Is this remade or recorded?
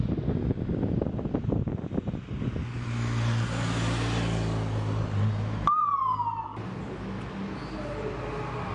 recorded